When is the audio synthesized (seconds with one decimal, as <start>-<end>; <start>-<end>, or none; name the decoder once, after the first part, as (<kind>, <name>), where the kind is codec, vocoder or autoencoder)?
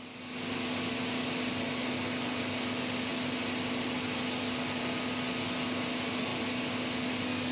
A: none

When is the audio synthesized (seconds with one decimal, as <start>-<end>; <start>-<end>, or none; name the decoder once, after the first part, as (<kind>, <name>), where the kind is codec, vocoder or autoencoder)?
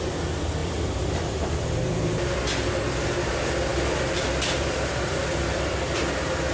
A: 0.6-1.5 (vocoder, BigVGAN v2); 3.7-6.0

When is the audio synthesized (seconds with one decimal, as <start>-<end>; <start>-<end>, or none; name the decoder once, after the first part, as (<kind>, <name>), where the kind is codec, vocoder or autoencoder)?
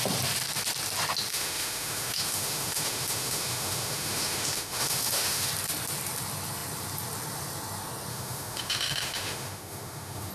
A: 1.3-5.5 (autoencoder, DAC-VAE); 8.1-10.3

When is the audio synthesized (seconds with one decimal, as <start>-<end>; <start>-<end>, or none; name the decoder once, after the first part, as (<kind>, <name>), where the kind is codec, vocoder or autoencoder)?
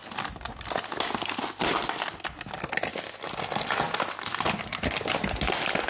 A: none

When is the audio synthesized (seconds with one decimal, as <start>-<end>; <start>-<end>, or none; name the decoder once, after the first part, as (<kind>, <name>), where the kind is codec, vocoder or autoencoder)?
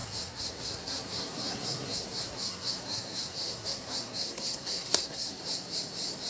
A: 0.0-5.4 (codec, SNAC)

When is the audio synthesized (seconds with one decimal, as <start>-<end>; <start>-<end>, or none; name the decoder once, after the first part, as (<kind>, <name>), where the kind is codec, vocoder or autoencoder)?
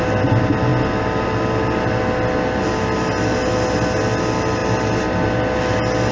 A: none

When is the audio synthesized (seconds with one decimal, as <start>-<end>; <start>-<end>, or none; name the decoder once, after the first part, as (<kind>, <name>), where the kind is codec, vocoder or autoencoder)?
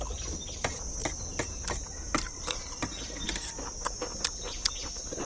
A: 1.0-2.5 (vocoder, BigVGAN v2)